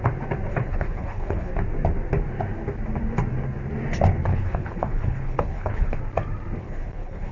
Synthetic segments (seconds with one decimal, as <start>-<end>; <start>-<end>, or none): 0.5-1.5; 4.3-6.0; 6.6-7.3